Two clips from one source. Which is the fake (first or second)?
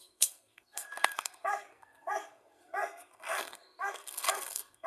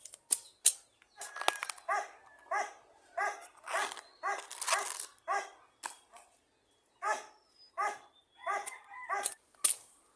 first